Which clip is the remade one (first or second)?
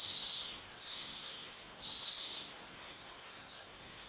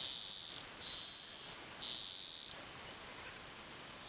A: first